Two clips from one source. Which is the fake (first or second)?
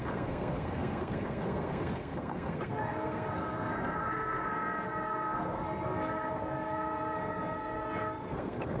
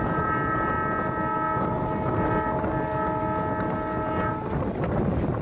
first